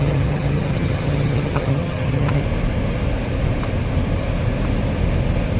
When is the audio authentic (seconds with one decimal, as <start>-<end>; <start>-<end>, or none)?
2.4-5.6